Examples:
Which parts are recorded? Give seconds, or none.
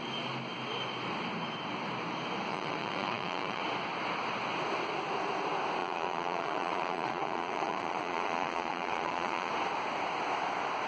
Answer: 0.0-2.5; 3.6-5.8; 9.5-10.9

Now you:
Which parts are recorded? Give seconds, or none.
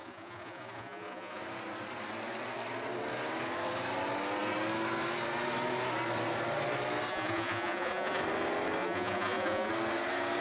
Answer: 1.4-7.1; 8.2-8.8; 9.7-10.4